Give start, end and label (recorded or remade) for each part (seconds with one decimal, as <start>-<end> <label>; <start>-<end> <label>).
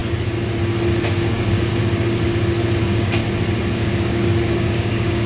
0.0-1.0 recorded; 1.0-1.7 remade; 1.7-2.8 recorded; 2.8-3.2 remade; 3.2-3.7 recorded; 3.7-5.3 remade